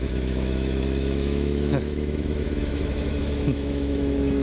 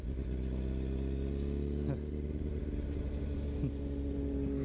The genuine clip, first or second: second